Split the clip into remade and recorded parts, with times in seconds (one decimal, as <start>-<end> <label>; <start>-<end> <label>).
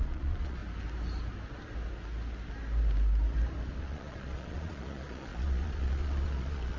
0.0-0.6 remade; 0.6-3.8 recorded; 3.8-6.8 remade